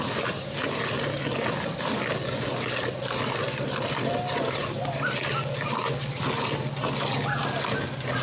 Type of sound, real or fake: real